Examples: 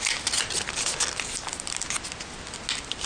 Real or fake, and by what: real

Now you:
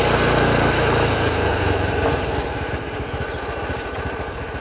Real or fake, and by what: fake, vocoder, BigVGAN v2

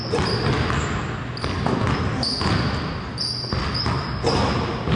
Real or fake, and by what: real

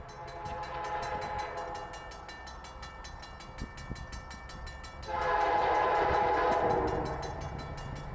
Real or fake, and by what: real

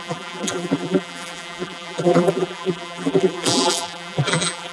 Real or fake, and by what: fake, vocoder, BigVGAN v2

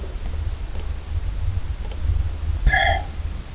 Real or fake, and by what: real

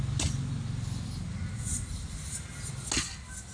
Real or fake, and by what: real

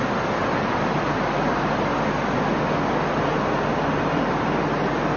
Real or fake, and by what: real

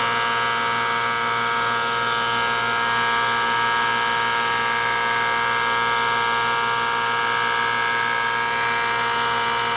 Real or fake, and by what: real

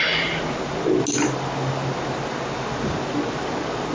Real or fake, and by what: real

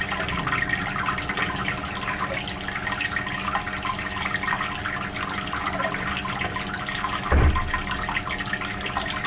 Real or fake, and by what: real